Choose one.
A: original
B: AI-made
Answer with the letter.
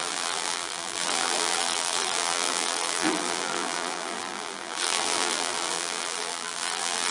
B